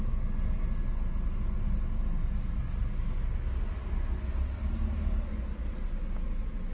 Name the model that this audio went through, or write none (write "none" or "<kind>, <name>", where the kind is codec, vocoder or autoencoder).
none